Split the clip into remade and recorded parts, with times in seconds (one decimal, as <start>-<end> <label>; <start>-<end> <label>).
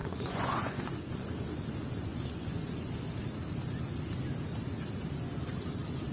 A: 0.0-1.5 remade; 1.5-2.1 recorded; 2.1-2.9 remade; 2.9-6.1 recorded